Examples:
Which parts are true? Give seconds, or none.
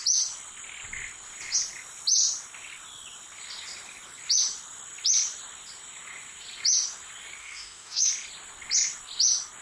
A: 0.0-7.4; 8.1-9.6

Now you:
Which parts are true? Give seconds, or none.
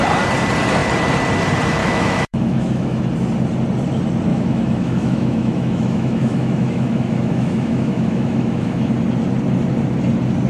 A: 0.0-1.8; 3.0-4.3; 8.9-10.5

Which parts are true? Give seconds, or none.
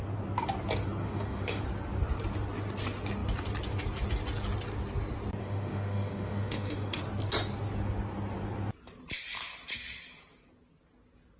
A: 0.0-1.0; 1.6-5.4; 7.0-11.4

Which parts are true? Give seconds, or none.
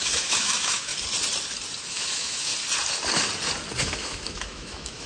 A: 0.9-1.9; 2.5-3.8